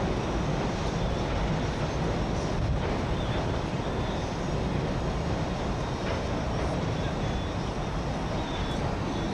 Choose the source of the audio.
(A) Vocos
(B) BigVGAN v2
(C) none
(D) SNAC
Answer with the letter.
C